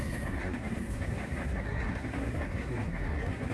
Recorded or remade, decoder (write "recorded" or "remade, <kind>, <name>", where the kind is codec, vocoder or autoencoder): remade, codec, SNAC